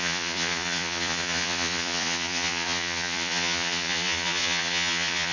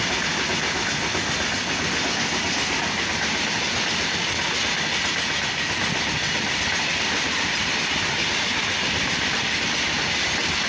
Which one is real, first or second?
second